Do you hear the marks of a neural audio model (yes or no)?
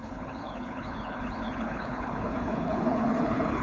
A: yes